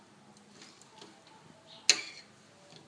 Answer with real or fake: real